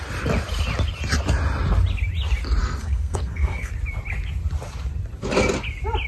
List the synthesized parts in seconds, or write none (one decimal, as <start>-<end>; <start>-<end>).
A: 2.6-3.7